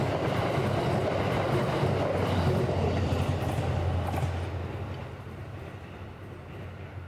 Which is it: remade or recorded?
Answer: recorded